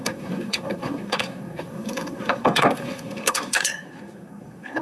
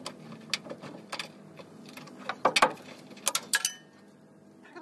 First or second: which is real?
second